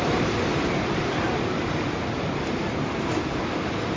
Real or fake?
real